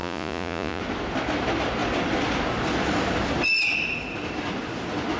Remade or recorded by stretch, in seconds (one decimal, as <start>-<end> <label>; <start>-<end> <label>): 0.0-0.8 remade; 0.8-5.2 recorded

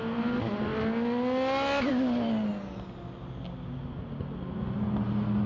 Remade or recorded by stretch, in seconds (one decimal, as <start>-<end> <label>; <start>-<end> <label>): 0.0-5.5 recorded

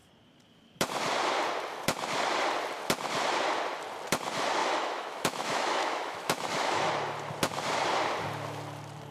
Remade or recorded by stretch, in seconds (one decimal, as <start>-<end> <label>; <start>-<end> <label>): 0.0-4.6 recorded; 4.6-6.9 remade; 6.9-9.1 recorded

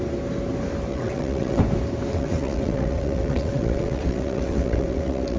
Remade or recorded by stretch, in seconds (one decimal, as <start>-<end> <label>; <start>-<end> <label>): 0.0-0.9 recorded; 0.9-1.6 remade; 1.6-2.1 recorded; 2.1-5.4 remade

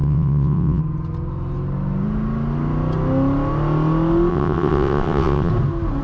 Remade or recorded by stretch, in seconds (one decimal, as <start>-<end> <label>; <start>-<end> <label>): 0.0-0.8 remade; 0.8-4.3 recorded; 4.3-5.5 remade; 5.5-6.0 recorded

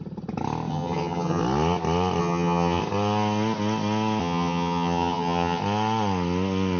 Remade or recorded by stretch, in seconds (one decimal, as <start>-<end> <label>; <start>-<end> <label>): 0.0-0.7 recorded; 0.7-1.4 remade; 1.4-2.2 recorded; 2.2-2.8 remade; 2.8-4.2 recorded; 4.2-5.6 remade; 5.6-6.8 recorded